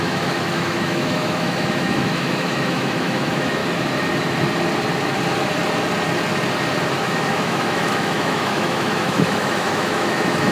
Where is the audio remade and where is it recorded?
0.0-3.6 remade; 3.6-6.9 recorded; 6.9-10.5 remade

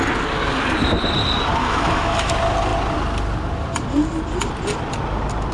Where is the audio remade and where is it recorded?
0.0-1.6 recorded; 1.6-2.3 remade; 2.3-5.5 recorded